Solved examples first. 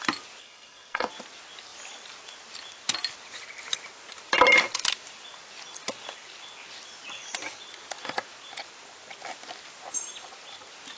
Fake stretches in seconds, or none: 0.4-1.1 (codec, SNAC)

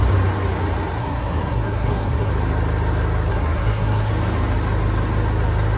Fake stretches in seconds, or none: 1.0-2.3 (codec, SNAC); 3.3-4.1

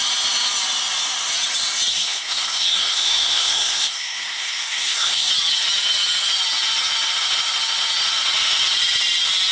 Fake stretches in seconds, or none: 1.9-5.3 (codec, SNAC)